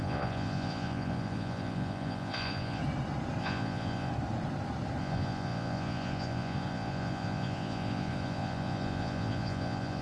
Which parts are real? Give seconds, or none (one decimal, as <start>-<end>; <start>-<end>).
2.8-3.4; 4.1-5.0